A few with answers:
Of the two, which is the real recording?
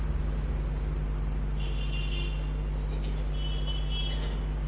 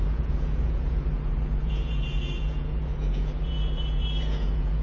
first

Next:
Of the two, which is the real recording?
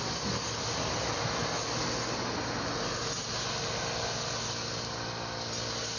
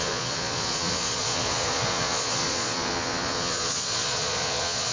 first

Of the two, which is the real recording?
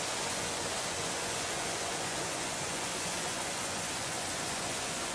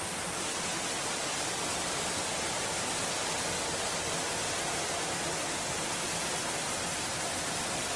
second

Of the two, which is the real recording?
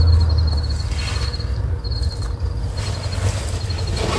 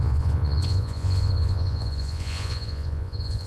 first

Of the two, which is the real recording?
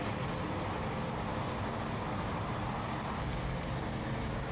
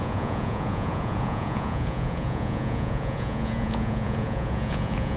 first